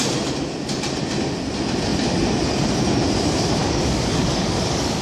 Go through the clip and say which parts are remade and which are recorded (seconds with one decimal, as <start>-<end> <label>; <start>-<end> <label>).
0.0-3.6 recorded; 3.6-5.0 remade